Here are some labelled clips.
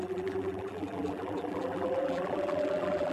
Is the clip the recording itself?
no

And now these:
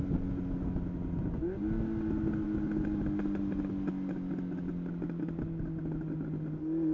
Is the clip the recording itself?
yes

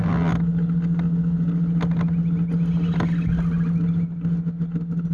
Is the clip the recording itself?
yes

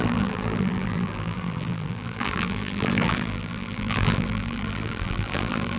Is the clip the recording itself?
no